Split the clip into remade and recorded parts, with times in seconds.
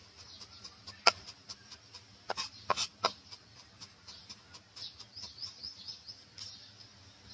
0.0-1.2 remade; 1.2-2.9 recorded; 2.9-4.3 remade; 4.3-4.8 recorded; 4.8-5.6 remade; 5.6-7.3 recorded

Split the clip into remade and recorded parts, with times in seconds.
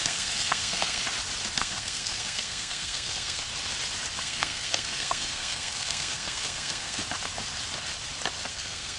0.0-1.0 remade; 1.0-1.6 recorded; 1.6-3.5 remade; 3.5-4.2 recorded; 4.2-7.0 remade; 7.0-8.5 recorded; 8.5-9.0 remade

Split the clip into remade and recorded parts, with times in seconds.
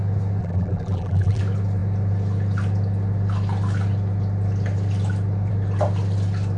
0.0-0.4 recorded; 0.4-1.4 remade; 1.4-6.6 recorded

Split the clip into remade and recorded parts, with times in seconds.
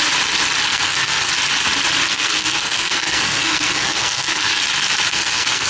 0.0-0.7 recorded; 0.7-1.3 remade; 1.3-2.1 recorded; 2.1-4.6 remade; 4.6-5.1 recorded; 5.1-5.7 remade